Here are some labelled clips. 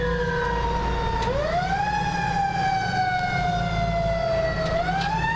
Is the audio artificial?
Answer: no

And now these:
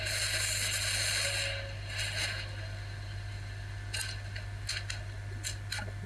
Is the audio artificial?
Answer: no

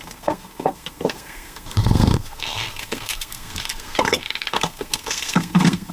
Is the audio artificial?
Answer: yes